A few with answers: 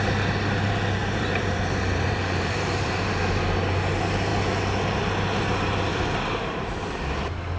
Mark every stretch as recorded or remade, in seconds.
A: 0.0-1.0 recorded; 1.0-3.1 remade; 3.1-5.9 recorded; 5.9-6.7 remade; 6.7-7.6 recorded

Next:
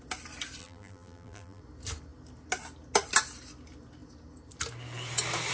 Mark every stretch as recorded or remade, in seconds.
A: 0.0-0.6 recorded; 0.6-1.6 remade; 1.6-5.5 recorded

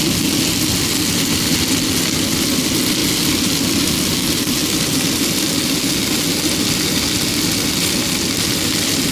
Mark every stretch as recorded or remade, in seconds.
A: 0.0-9.1 recorded

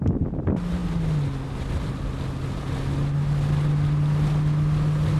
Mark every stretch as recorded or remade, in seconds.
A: 0.0-5.2 recorded

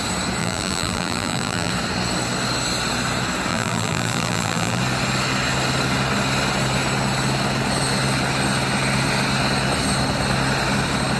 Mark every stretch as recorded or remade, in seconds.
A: 0.0-0.4 recorded; 0.4-1.7 remade; 1.7-3.5 recorded; 3.5-4.8 remade; 4.8-11.2 recorded

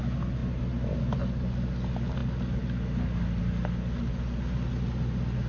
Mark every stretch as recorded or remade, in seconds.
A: 0.0-5.5 recorded